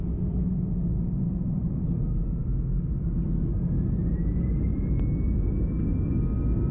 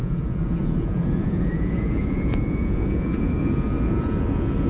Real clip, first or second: first